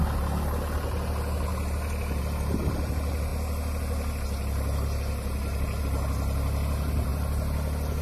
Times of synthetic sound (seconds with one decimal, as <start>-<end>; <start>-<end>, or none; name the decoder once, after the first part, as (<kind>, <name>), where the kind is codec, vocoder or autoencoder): none